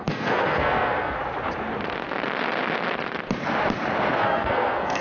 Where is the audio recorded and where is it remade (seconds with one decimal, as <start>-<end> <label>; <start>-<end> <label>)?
0.0-1.2 remade; 1.2-4.2 recorded; 4.2-5.0 remade